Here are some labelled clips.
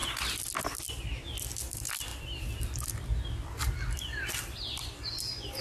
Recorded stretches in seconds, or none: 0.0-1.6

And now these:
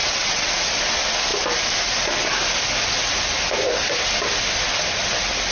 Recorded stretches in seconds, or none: 0.5-5.5

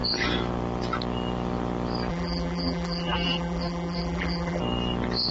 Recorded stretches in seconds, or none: 0.0-2.1; 4.6-5.3

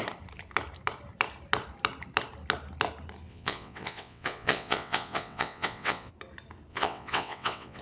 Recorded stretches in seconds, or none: 0.0-3.3; 6.1-6.7

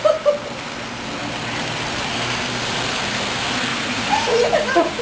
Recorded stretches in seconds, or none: 0.0-3.7